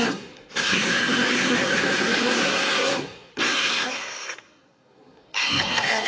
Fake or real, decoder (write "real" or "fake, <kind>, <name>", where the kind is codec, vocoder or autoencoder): fake, codec, SNAC